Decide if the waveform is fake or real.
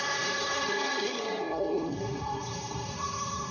fake